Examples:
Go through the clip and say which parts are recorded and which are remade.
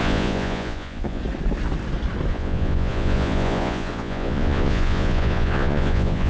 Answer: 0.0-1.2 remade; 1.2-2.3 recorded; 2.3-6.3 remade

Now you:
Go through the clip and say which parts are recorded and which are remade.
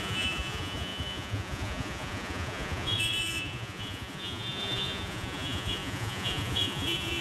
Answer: 0.0-7.2 remade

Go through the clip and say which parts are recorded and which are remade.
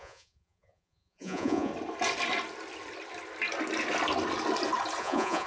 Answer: 0.0-1.7 remade; 1.7-5.0 recorded; 5.0-5.5 remade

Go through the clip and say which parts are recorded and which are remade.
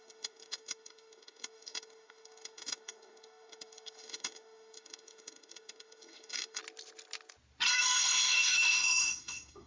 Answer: 0.0-6.6 remade; 6.6-7.7 recorded; 7.7-9.7 remade